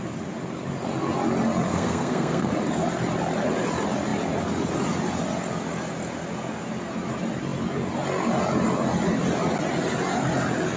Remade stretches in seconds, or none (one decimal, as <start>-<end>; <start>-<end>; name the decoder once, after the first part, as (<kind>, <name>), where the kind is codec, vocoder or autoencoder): 1.7-2.5 (codec, SNAC)